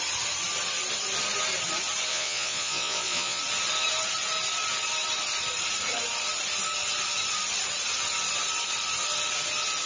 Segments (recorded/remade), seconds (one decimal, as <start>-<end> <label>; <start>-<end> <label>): 0.0-2.1 recorded; 2.1-3.4 remade; 3.4-9.9 recorded